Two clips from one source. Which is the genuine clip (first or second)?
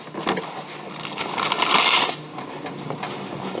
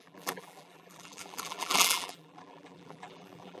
first